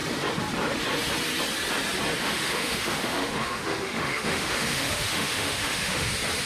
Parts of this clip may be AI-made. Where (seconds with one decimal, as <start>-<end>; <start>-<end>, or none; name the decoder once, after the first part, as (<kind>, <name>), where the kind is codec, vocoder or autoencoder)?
2.2-6.1 (autoencoder, DAC-VAE)